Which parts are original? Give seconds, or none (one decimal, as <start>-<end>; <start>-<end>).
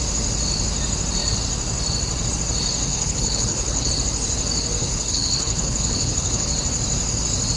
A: 0.0-2.9; 3.9-4.8; 6.5-7.6